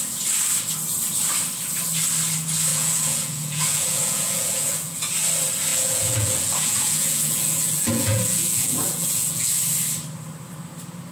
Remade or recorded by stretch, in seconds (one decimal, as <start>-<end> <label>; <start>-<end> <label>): 0.0-2.7 recorded; 2.7-5.1 remade; 5.1-5.7 recorded; 5.7-9.5 remade; 9.5-11.1 recorded